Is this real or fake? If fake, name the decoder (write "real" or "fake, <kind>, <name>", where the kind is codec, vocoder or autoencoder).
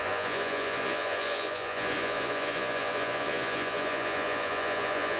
fake, vocoder, Vocos